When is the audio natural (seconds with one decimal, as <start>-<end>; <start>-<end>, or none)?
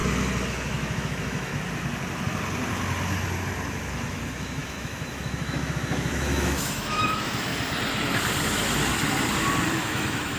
0.0-0.5; 1.5-3.7; 7.5-9.7